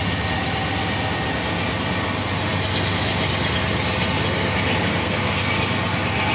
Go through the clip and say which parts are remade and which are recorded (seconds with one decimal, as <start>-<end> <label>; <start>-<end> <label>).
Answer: 0.0-4.8 recorded; 4.8-5.4 remade; 5.4-6.3 recorded